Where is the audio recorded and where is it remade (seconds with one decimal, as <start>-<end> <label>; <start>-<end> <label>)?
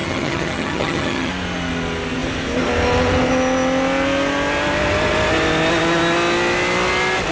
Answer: 0.0-1.3 remade; 1.3-7.3 recorded